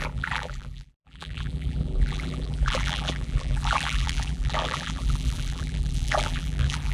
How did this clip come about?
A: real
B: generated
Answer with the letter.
B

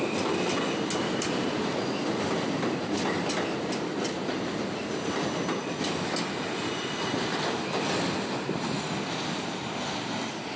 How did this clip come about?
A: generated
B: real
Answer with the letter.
B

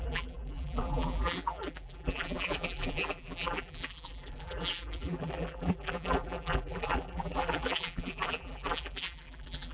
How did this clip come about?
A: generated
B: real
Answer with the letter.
A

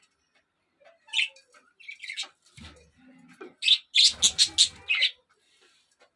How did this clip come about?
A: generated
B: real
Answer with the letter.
B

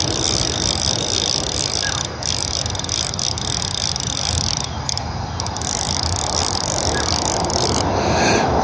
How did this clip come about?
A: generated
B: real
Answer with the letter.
B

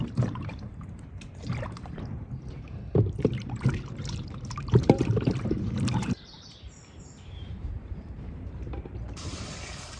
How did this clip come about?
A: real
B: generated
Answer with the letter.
B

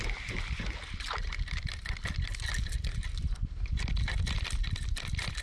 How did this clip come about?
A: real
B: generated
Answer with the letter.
A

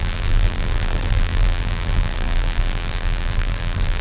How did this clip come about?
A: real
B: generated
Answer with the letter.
B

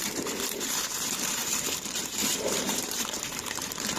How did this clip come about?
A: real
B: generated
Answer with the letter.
B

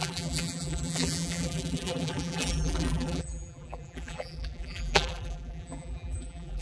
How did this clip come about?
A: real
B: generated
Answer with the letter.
B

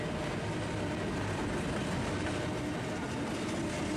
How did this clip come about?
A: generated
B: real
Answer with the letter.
B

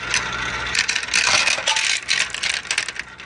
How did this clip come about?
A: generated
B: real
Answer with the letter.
B